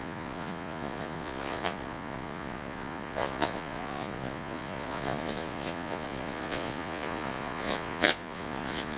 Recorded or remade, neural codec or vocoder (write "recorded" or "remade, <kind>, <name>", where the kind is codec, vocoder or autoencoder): remade, vocoder, Vocos